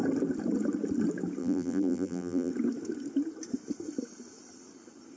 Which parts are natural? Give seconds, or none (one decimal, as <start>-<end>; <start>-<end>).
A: 0.0-1.4; 2.5-5.2